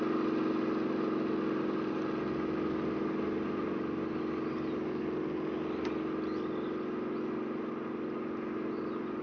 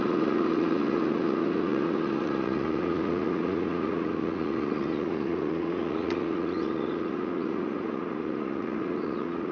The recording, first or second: first